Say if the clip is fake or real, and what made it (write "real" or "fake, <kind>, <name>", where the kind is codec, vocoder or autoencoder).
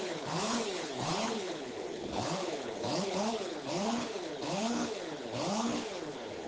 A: fake, codec, HILCodec